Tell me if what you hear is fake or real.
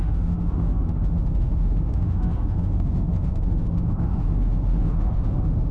fake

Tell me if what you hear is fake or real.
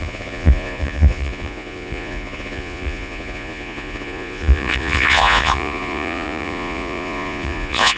fake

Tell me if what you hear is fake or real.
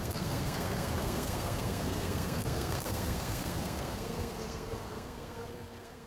fake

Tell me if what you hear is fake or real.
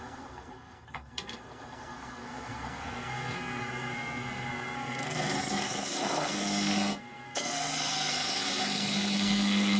fake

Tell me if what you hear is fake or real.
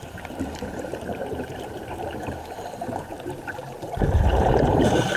fake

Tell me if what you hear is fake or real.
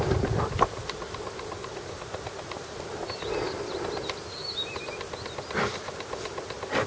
real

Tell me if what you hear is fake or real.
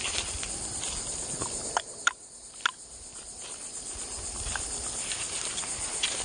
fake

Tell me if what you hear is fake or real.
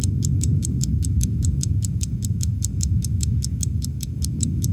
fake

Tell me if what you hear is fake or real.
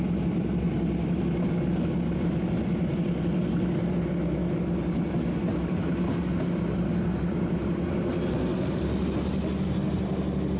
real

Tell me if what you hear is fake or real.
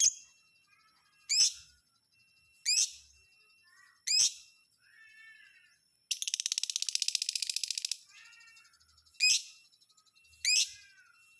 real